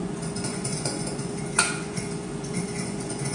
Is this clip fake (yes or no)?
yes